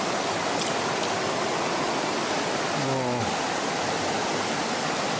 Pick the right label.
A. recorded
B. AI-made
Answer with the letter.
A